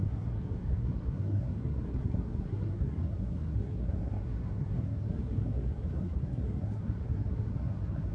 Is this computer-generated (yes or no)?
yes